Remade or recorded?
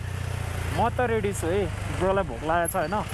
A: recorded